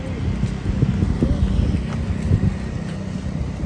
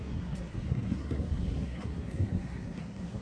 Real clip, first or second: first